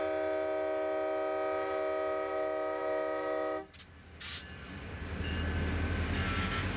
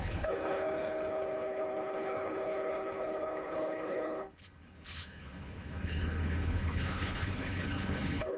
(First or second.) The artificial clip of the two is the second